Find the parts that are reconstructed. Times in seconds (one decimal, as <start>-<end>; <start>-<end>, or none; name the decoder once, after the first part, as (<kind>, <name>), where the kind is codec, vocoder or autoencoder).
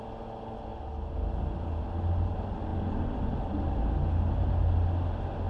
none